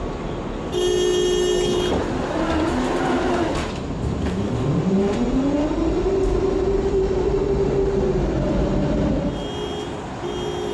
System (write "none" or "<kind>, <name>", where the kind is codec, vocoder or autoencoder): none